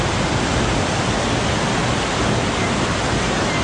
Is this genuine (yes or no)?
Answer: yes